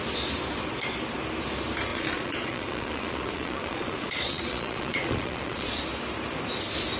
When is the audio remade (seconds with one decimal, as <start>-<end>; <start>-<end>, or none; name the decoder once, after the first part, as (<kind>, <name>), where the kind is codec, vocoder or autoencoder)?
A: 1.9-5.8 (vocoder, Vocos)